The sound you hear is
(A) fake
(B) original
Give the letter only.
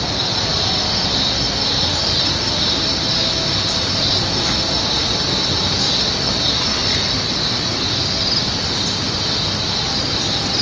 B